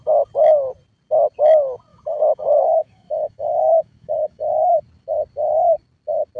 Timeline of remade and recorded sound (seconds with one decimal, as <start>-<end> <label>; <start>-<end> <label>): 0.0-1.9 recorded; 1.9-4.8 remade; 4.8-6.4 recorded

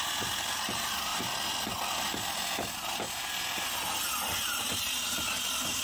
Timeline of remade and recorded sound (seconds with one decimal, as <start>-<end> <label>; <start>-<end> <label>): 0.0-5.8 recorded

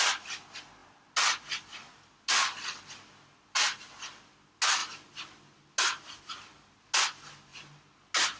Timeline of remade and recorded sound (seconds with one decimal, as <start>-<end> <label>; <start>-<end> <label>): 0.0-8.4 recorded

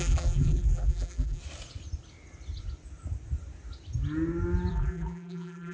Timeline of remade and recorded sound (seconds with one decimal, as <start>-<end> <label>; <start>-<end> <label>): 0.0-1.4 remade; 1.4-4.7 recorded; 4.7-5.7 remade

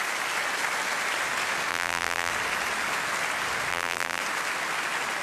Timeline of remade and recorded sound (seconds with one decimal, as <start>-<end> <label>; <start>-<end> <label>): 0.0-1.7 recorded; 1.7-2.3 remade; 2.3-3.7 recorded; 3.7-4.2 remade; 4.2-5.2 recorded

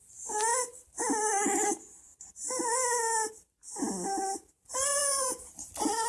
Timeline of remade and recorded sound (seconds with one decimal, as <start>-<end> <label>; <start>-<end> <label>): 0.0-4.9 recorded; 4.9-5.5 remade; 5.5-6.1 recorded

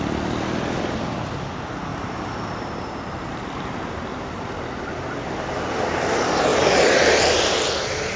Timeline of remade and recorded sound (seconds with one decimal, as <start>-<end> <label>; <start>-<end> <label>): 0.0-1.9 recorded; 1.9-5.3 remade; 5.3-6.5 recorded; 6.5-7.7 remade; 7.7-8.2 recorded